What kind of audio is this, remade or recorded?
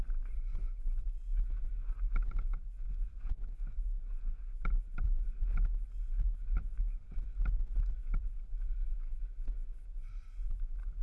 recorded